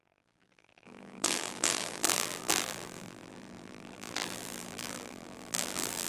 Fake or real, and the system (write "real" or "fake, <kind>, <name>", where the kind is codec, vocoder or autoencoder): fake, vocoder, BigVGAN v2